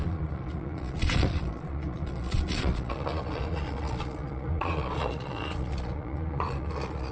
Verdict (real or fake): fake